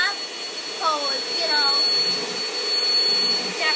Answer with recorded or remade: recorded